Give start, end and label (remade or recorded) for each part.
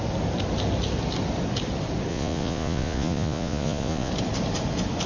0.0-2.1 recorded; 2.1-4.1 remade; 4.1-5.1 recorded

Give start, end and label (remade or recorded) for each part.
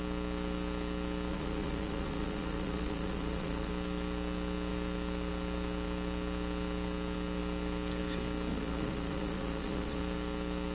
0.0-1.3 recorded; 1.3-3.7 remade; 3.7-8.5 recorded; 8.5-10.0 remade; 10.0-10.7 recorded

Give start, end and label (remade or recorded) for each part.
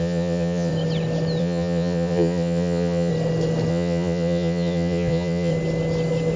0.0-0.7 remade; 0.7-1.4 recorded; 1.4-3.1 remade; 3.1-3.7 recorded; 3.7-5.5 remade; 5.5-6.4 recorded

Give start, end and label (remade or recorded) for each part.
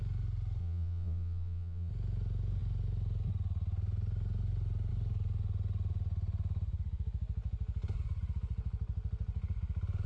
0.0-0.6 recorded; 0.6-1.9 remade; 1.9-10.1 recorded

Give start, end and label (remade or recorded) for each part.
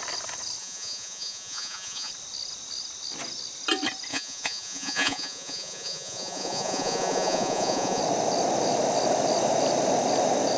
0.0-0.6 recorded; 0.6-2.1 remade; 2.1-4.1 recorded; 4.1-8.0 remade; 8.0-10.6 recorded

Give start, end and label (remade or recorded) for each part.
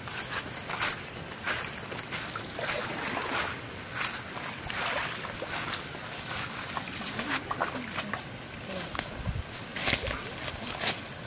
0.0-11.3 recorded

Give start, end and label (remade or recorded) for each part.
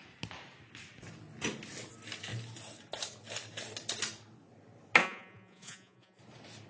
0.0-5.0 recorded; 5.0-6.2 remade; 6.2-6.7 recorded